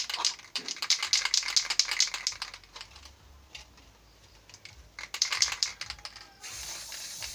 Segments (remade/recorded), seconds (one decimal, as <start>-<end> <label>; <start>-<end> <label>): 0.0-1.0 remade; 1.0-5.2 recorded; 5.2-5.7 remade; 5.7-7.3 recorded